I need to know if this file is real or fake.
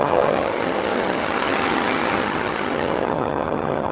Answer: fake